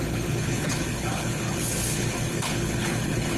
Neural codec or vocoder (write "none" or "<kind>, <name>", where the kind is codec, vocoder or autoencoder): codec, HILCodec